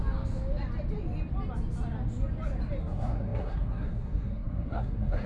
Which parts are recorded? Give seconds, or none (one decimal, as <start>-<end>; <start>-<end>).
0.0-2.8